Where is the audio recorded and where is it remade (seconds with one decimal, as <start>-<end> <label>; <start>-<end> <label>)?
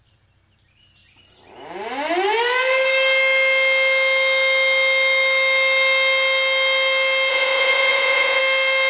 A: 0.0-7.3 recorded; 7.3-8.4 remade; 8.4-8.9 recorded